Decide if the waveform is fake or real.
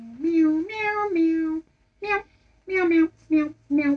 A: real